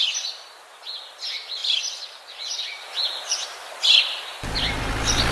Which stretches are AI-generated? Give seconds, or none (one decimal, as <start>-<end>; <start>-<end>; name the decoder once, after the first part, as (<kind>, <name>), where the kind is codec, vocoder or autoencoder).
1.6-4.8 (vocoder, BigVGAN v2)